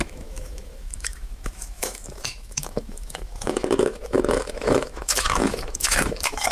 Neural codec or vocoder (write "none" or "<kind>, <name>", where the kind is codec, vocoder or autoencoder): autoencoder, DAC-VAE